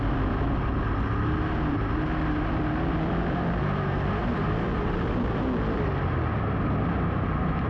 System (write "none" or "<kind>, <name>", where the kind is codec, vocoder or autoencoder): none